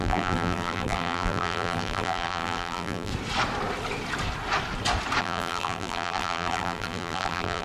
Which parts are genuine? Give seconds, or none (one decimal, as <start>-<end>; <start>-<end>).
3.1-5.2